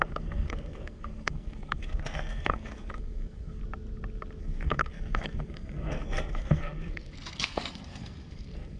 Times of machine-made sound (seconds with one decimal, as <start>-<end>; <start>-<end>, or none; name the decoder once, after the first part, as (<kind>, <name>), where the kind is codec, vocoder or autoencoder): 0.0-3.6 (codec, SNAC); 4.4-8.8